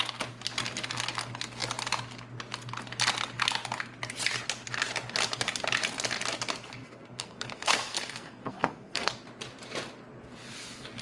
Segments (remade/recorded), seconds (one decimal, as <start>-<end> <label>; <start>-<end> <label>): 0.0-6.8 recorded; 6.8-9.1 remade; 9.1-11.0 recorded